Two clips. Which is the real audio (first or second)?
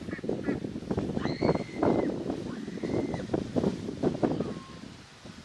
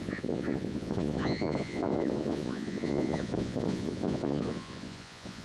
first